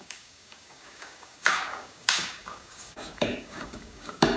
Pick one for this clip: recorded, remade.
remade